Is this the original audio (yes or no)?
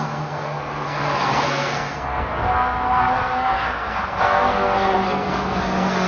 no